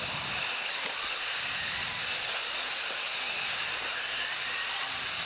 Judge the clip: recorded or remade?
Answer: recorded